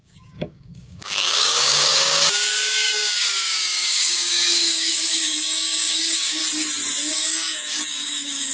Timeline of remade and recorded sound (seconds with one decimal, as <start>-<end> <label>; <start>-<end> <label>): 0.0-6.4 remade; 6.4-7.1 recorded; 7.1-8.5 remade